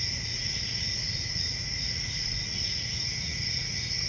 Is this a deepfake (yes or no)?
yes